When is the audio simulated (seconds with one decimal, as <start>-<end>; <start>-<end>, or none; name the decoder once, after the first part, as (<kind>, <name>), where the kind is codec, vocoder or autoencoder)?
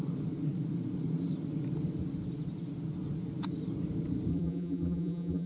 4.3-5.5 (vocoder, BigVGAN v2)